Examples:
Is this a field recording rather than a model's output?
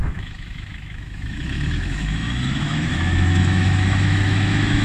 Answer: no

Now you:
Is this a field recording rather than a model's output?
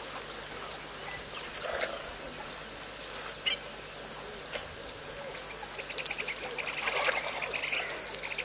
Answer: yes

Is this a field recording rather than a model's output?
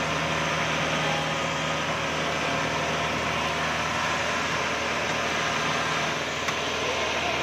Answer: yes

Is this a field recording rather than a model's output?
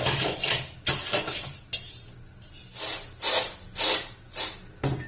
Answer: yes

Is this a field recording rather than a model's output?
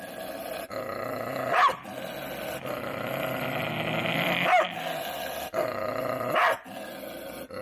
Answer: yes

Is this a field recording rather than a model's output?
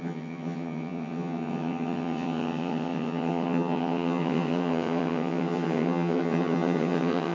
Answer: no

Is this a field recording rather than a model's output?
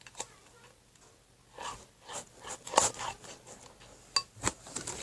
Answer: yes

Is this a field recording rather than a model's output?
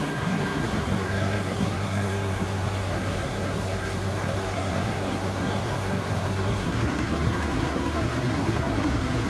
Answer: no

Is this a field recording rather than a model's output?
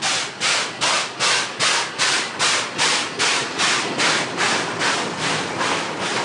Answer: yes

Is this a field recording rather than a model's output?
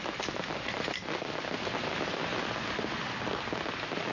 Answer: yes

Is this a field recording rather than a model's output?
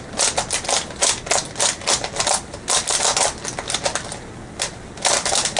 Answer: yes